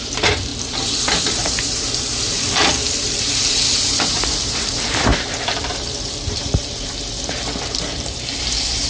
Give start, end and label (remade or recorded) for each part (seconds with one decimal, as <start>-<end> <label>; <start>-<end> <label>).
0.0-0.5 remade; 0.5-1.2 recorded; 1.2-5.1 remade; 5.1-5.7 recorded; 5.7-8.9 remade